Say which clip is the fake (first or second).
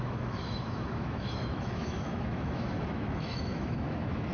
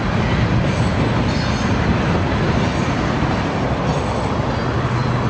first